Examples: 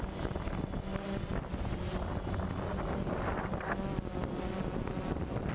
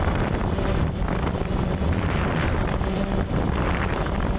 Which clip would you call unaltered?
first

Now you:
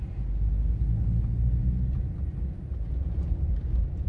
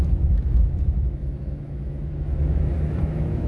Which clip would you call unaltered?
first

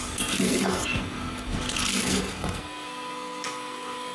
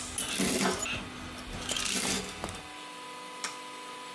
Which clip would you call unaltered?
second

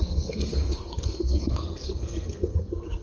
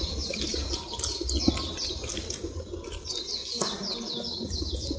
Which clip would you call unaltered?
second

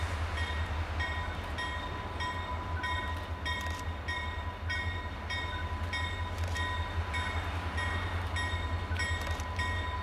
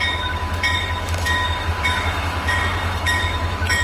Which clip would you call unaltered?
first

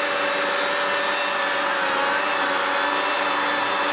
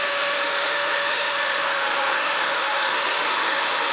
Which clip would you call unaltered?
first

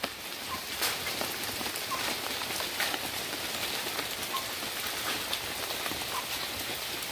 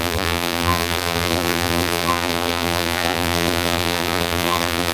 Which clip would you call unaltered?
first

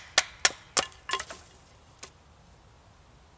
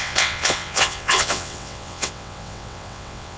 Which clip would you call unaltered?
first